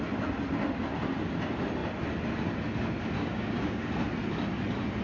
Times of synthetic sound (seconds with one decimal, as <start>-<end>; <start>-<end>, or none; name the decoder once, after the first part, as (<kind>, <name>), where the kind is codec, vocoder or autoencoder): 3.2-3.9 (codec, DAC)

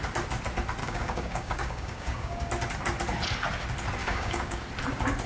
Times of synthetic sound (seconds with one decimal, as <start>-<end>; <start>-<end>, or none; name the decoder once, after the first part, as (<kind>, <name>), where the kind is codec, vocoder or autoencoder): 0.8-2.5 (codec, DAC); 4.0-4.6

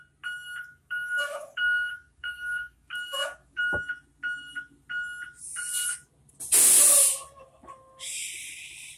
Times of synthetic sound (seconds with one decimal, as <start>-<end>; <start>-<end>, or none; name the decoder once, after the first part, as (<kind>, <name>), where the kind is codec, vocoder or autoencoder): 0.7-3.6 (codec, DAC)

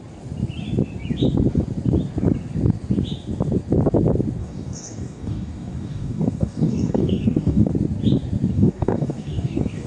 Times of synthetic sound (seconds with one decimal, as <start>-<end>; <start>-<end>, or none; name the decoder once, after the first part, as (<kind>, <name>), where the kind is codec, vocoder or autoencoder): 4.4-7.7 (codec, DAC); 8.5-9.9